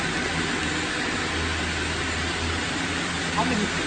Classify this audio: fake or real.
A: real